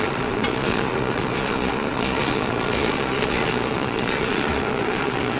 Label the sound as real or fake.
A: fake